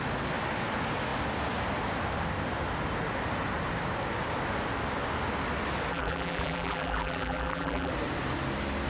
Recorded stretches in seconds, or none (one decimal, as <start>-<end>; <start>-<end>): 0.0-5.9; 7.9-8.9